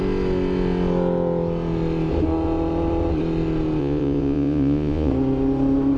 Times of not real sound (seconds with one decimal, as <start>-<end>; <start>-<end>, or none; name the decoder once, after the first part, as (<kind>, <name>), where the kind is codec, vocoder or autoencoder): 3.8-5.1 (vocoder, Vocos)